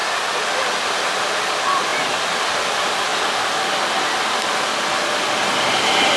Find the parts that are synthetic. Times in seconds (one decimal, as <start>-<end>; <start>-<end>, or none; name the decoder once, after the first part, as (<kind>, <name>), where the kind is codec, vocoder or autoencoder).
none